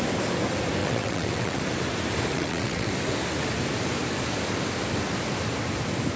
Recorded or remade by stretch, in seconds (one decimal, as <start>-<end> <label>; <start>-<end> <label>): 0.0-0.8 recorded; 0.8-1.6 remade; 1.6-2.3 recorded; 2.3-2.9 remade; 2.9-6.2 recorded